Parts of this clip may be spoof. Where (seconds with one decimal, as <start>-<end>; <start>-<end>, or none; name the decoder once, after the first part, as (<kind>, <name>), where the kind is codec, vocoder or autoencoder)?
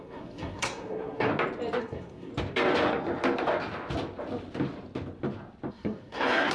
0.0-1.3 (codec, SNAC); 1.8-2.3; 5.7-6.5